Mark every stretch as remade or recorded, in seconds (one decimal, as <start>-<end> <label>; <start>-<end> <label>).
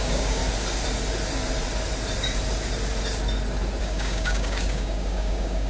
0.0-0.4 remade; 0.4-3.8 recorded; 3.8-5.7 remade